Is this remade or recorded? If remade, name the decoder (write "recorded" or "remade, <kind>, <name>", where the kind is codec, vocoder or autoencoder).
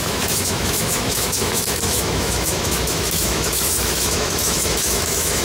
remade, autoencoder, DAC-VAE